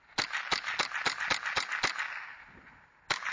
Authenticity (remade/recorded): recorded